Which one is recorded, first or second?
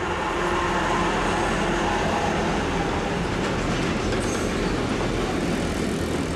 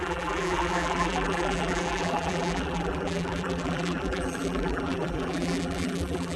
first